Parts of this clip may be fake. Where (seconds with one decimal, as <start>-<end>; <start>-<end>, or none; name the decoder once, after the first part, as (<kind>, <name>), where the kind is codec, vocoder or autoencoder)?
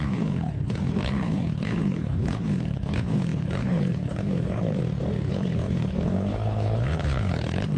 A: 0.0-4.8 (codec, HILCodec); 5.3-7.8